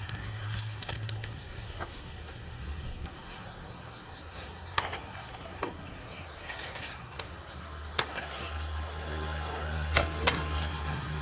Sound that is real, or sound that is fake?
fake